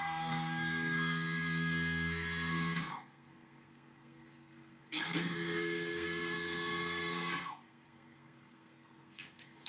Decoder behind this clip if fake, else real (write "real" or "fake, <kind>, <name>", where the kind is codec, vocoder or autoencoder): fake, codec, SNAC